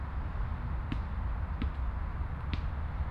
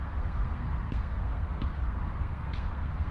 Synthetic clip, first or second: second